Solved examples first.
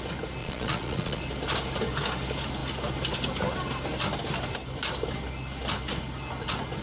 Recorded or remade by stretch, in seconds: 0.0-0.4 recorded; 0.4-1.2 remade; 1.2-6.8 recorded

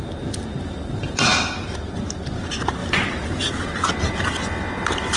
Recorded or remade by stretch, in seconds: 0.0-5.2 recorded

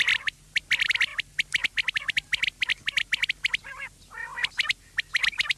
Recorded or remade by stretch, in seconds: 0.0-5.6 recorded

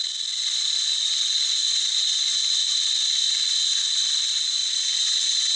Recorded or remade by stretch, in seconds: 0.0-0.5 recorded; 0.5-2.3 remade; 2.3-3.8 recorded; 3.8-4.6 remade; 4.6-5.6 recorded

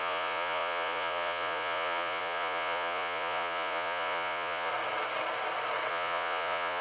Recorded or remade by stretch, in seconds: 0.0-4.7 remade; 4.7-5.9 recorded; 5.9-6.8 remade

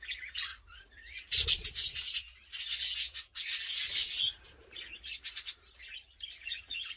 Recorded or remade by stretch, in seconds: 0.0-0.5 recorded; 0.5-1.5 remade; 1.5-7.0 recorded

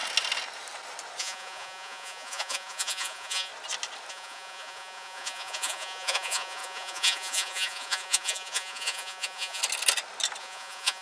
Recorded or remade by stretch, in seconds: 0.0-1.2 recorded; 1.2-3.5 remade; 3.5-4.1 recorded; 4.1-9.6 remade; 9.6-10.4 recorded; 10.4-11.0 remade